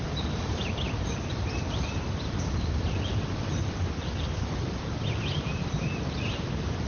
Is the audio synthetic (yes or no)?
yes